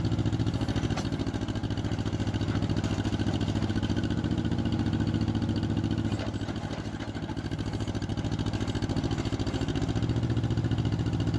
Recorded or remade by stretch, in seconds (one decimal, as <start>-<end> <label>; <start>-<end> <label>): 0.0-11.4 recorded